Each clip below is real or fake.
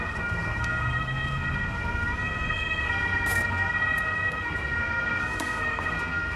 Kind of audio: fake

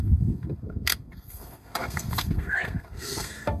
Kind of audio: fake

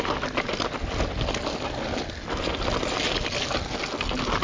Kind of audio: real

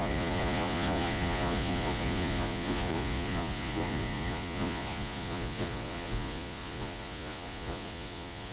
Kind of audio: fake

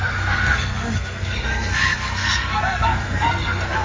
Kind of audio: fake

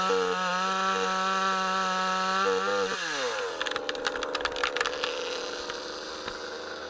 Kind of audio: real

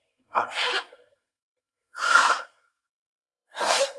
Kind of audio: fake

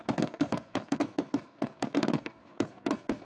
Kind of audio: fake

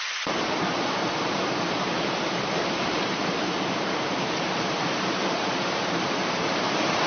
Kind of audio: fake